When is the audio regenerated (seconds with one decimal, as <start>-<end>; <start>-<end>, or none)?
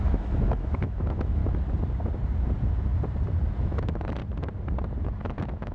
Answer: 0.0-1.4; 3.6-4.2; 5.0-5.7